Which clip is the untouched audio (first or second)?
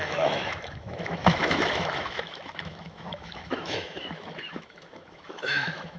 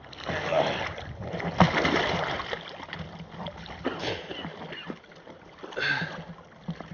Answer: second